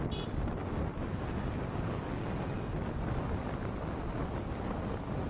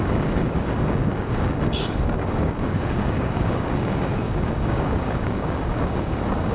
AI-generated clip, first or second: second